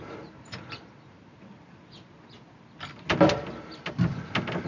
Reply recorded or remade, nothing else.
recorded